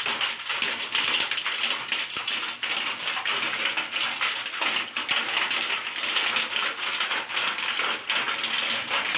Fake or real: real